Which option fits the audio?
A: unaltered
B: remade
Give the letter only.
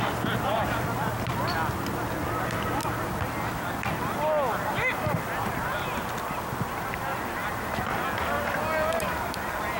A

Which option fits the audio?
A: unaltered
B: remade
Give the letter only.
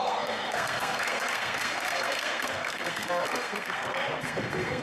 B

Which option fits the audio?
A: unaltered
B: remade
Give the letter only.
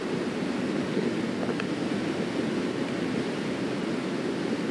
A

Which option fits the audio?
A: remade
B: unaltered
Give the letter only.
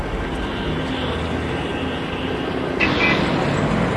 B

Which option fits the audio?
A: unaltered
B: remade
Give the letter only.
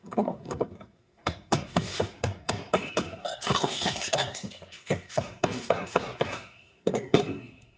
B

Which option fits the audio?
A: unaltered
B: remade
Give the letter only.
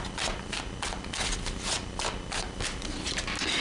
A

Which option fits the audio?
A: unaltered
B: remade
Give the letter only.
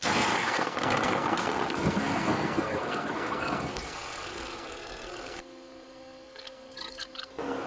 B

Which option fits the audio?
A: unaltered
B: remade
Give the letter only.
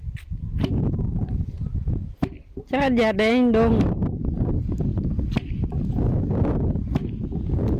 A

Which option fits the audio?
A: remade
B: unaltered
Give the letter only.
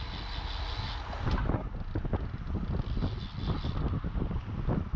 B